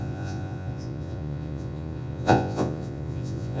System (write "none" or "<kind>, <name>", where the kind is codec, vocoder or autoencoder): vocoder, Vocos